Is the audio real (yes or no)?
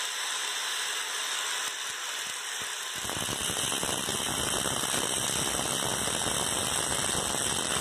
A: yes